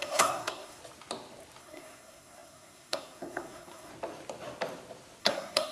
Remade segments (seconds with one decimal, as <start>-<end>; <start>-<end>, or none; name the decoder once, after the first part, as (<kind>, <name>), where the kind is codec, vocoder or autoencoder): 0.0-0.8 (codec, SNAC); 1.6-3.9; 5.2-5.7